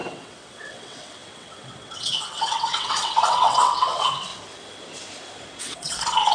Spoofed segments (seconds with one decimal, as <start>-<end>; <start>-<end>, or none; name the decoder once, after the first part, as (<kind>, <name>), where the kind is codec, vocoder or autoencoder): 0.0-4.3 (vocoder, WaveNeXt); 5.6-6.3